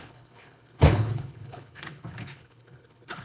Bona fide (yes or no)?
no